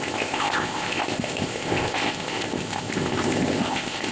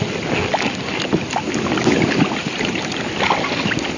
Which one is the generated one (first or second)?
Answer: first